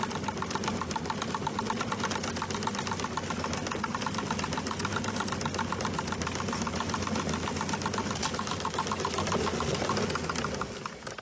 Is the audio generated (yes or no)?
no